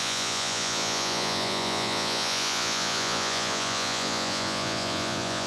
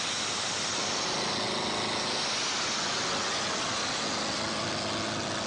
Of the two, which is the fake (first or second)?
first